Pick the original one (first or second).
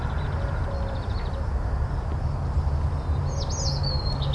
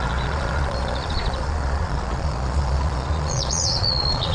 first